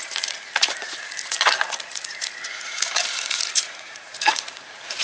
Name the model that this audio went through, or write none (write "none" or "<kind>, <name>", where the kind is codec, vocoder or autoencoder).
vocoder, Vocos